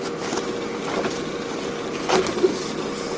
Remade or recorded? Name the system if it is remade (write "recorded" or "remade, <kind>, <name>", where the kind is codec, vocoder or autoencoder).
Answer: recorded